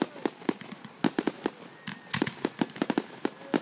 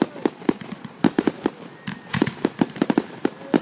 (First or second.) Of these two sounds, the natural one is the first